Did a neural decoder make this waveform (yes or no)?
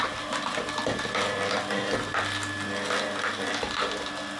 no